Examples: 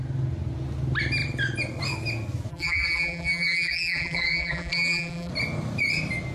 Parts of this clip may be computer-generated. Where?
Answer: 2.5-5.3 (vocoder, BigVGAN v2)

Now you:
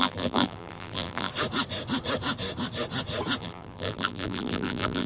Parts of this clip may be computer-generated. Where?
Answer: 0.0-1.3 (vocoder, BigVGAN v2); 3.4-5.1

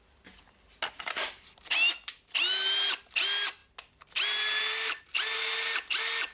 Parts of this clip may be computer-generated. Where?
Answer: none

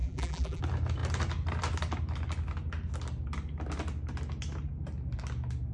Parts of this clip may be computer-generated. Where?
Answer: 0.0-0.6 (vocoder, BigVGAN v2)